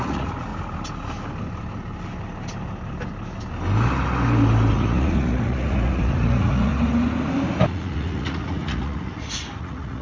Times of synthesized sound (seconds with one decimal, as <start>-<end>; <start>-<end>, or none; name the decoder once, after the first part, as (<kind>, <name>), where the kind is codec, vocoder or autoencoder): 0.0-0.5 (vocoder, Vocos); 4.7-6.7; 7.7-10.0